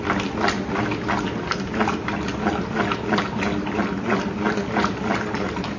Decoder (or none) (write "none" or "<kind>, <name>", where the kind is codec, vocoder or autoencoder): none